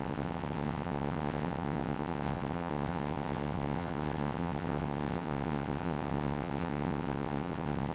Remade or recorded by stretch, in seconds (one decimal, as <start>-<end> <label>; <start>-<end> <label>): 0.0-7.9 remade